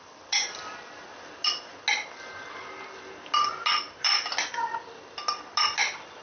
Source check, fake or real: real